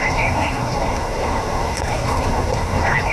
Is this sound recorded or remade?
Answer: remade